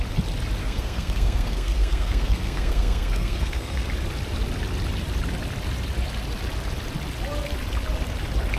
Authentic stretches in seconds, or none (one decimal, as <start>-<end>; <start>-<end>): 0.0-0.6; 3.9-8.6